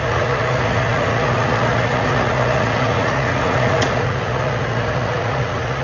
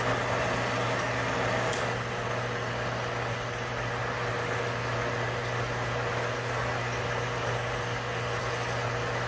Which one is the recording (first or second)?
second